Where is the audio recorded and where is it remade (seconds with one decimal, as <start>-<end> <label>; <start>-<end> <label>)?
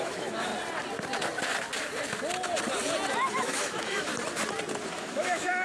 0.0-0.5 remade; 0.5-3.3 recorded; 3.3-4.1 remade; 4.1-4.9 recorded; 4.9-5.6 remade